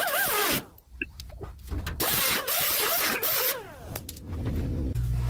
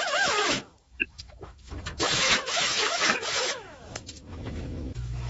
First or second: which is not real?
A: second